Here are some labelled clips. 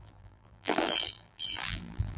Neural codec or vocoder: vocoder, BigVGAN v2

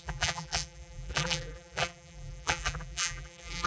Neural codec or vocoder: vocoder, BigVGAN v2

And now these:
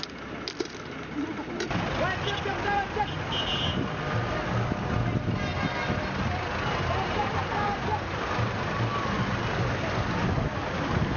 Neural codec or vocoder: none